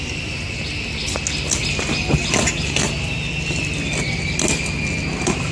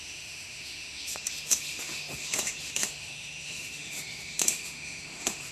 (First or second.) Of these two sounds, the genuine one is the first